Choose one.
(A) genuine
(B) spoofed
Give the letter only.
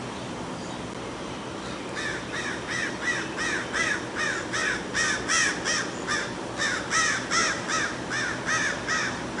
A